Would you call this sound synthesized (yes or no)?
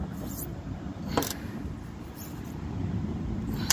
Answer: yes